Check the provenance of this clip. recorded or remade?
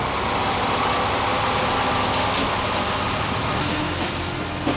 recorded